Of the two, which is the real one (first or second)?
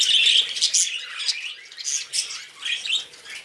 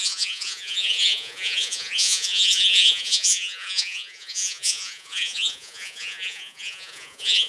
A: first